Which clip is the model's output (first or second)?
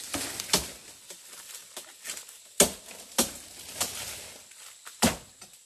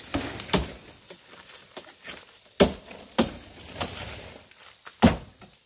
second